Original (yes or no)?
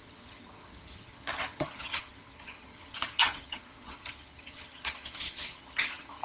no